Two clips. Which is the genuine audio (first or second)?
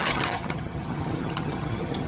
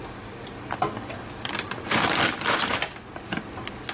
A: second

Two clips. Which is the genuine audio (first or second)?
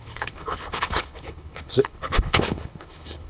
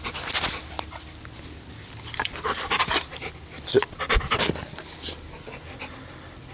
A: second